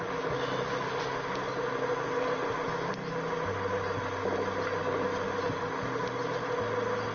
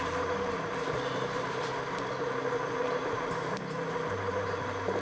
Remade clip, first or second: second